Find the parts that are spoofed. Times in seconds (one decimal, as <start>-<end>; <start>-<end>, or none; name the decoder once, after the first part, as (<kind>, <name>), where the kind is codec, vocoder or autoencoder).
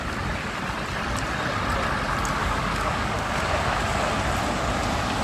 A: 2.4-4.1 (codec, DAC)